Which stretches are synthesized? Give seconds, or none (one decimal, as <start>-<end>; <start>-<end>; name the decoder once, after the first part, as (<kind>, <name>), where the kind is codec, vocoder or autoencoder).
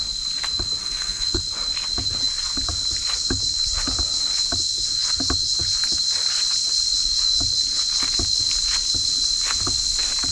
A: 0.8-1.4 (codec, SNAC)